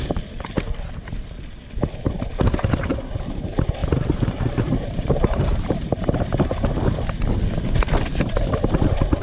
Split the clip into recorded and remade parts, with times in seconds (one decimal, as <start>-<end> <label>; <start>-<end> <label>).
0.0-3.8 recorded; 3.8-6.2 remade; 6.2-9.2 recorded